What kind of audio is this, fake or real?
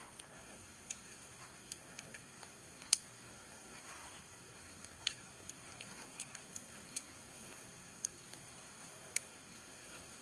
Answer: fake